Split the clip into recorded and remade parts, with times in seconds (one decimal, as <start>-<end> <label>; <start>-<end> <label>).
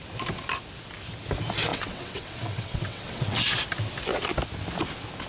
0.0-1.7 recorded; 1.7-3.4 remade; 3.4-5.3 recorded